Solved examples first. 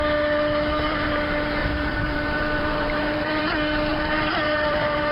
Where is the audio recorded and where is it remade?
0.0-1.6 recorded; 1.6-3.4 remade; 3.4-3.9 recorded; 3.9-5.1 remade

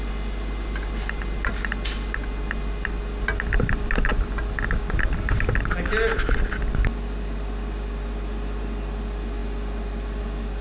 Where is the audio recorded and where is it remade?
0.0-10.6 recorded

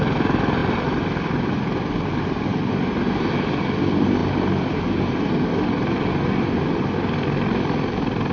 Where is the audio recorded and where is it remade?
0.0-0.6 recorded; 0.6-3.6 remade; 3.6-8.3 recorded

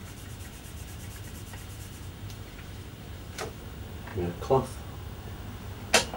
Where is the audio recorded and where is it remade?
0.0-3.5 remade; 3.5-6.2 recorded

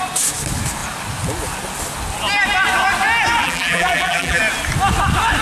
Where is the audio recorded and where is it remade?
0.0-3.4 recorded; 3.4-4.4 remade; 4.4-5.4 recorded

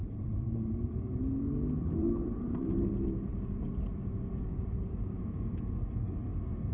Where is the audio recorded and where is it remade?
0.0-1.2 remade; 1.2-1.8 recorded; 1.8-4.0 remade; 4.0-4.5 recorded; 4.5-5.2 remade; 5.2-6.7 recorded

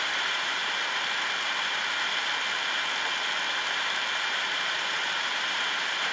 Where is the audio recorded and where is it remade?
0.0-0.6 remade; 0.6-4.3 recorded; 4.3-6.1 remade

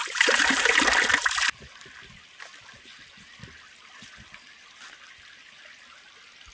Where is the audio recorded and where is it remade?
0.0-0.8 remade; 0.8-6.5 recorded